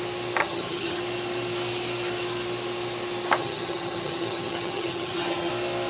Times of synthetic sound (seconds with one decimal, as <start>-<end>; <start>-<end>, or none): 0.4-1.0; 3.4-5.5